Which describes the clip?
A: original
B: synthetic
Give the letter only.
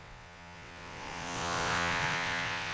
B